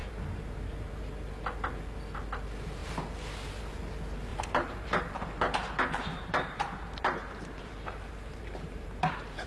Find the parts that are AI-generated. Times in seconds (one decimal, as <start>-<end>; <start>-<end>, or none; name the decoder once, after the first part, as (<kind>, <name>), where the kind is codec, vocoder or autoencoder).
0.0-1.0 (vocoder, BigVGAN v2); 4.3-9.5